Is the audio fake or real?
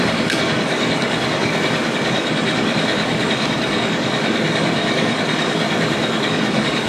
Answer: fake